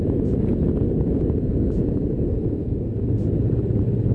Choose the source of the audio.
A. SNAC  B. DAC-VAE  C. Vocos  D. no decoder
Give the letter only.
D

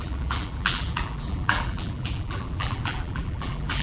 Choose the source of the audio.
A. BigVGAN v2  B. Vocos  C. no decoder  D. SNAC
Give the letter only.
A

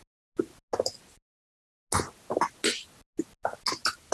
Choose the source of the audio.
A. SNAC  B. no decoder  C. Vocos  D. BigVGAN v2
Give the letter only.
B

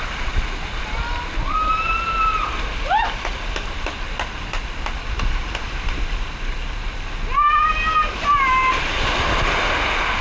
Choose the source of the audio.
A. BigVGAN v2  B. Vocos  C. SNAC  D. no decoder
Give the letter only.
D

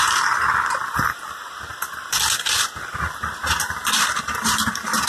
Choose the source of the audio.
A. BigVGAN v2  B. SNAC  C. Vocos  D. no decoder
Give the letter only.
A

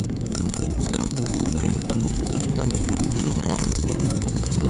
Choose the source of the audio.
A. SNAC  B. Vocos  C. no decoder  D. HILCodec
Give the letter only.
A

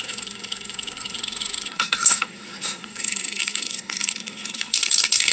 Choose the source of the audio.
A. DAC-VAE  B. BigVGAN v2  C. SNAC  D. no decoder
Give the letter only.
C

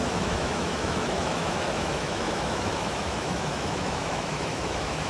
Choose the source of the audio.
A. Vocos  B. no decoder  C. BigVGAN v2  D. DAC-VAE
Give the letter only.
D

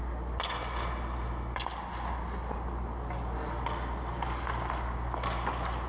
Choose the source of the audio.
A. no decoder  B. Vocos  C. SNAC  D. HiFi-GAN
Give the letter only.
A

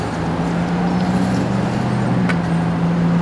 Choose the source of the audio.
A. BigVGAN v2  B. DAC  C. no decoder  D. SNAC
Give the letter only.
C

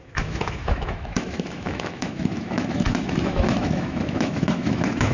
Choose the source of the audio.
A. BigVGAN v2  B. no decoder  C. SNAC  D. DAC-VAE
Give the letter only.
D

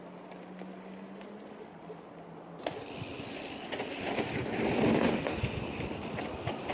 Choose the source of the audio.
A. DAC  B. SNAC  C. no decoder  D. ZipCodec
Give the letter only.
C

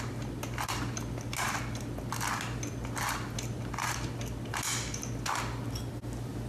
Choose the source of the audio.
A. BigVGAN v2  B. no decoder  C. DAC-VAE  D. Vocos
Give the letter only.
B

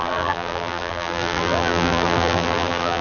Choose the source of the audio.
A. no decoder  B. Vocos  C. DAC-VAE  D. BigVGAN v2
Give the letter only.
D